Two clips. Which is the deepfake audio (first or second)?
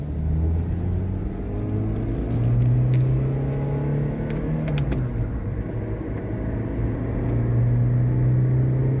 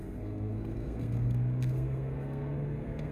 second